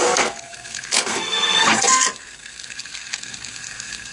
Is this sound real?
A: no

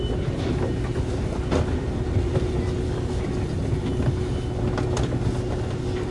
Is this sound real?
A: yes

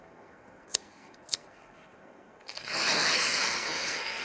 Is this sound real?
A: no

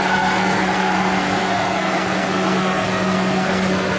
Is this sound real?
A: no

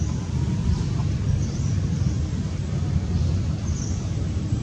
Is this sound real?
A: yes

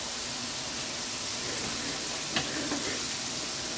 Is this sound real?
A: yes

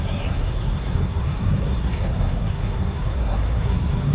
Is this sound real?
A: no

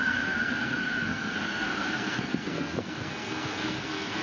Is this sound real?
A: no